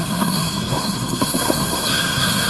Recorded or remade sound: remade